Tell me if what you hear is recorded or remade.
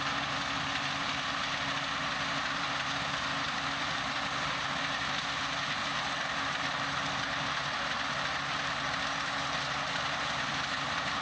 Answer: recorded